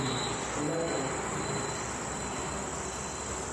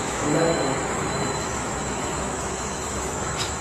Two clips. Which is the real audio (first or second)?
first